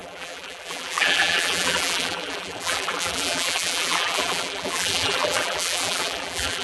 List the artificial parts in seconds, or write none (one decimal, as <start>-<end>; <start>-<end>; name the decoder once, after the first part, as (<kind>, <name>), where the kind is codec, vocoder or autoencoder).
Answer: 0.0-6.6 (vocoder, BigVGAN v2)